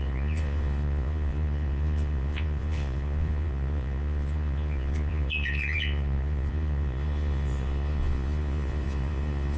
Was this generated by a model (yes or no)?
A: yes